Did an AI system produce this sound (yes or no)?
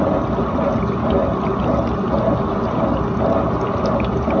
no